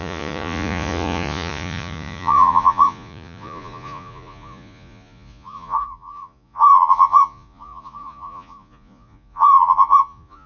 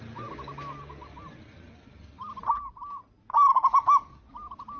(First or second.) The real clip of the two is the second